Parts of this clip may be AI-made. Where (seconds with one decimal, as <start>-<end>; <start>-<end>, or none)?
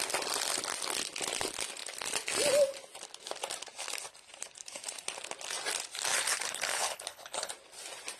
6.1-7.5